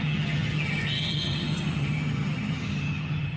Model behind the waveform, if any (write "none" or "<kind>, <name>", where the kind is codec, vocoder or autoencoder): vocoder, HiFi-GAN